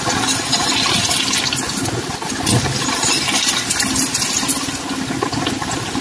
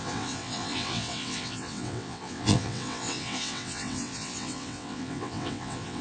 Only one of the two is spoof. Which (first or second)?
second